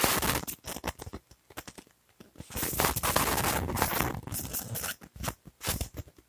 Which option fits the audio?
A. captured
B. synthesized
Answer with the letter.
A